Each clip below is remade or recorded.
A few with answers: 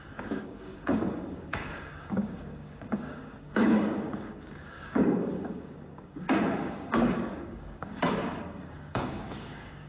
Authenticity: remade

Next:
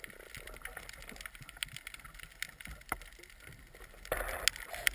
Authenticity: recorded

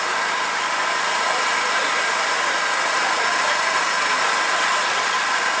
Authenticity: recorded